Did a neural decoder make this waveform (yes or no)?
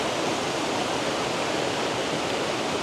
yes